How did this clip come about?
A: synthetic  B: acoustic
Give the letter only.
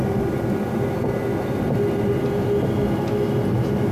B